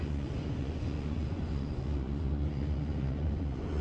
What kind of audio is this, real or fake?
fake